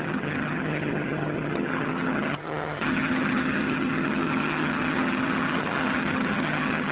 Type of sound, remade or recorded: remade